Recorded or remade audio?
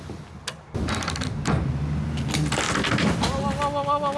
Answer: recorded